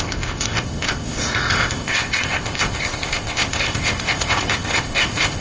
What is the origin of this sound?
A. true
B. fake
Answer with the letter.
B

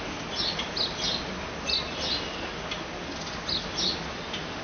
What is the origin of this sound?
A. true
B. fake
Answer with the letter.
A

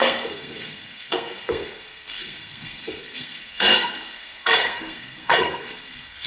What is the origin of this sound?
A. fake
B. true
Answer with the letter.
A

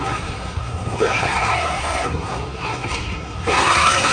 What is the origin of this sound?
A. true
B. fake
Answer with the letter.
B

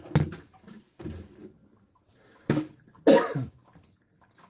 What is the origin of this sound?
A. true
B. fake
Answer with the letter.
A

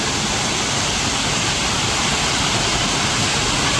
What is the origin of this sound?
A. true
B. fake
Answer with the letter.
A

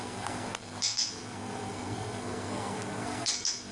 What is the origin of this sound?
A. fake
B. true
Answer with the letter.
A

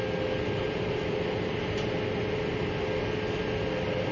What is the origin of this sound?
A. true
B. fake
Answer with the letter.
A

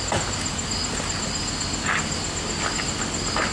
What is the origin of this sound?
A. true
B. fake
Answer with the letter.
A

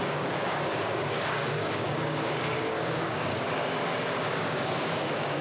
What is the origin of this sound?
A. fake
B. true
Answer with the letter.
A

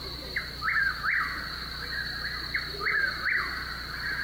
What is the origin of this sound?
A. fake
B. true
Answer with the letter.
B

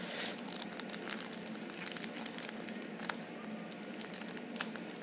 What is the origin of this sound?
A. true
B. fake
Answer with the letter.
A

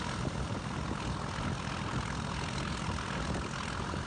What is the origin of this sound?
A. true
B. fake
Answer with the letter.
A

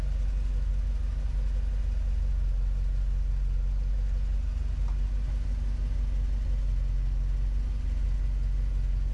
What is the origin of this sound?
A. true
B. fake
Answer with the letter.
A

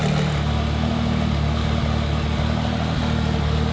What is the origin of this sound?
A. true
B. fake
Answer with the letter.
A